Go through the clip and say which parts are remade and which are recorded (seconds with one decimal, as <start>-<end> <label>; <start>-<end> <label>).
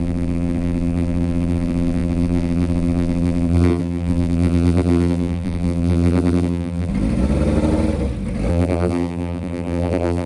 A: 0.0-6.9 remade; 6.9-8.5 recorded; 8.5-10.3 remade